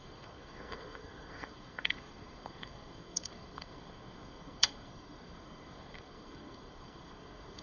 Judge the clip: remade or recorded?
remade